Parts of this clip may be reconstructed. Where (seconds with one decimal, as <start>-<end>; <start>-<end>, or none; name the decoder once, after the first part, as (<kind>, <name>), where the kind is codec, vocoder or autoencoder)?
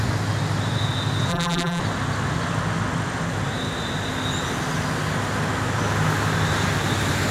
1.3-1.8 (vocoder, BigVGAN v2)